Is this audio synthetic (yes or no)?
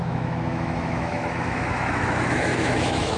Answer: yes